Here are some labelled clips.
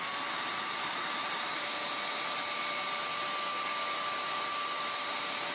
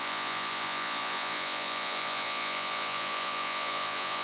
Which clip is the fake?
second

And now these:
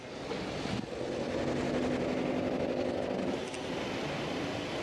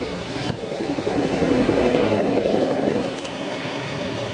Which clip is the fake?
second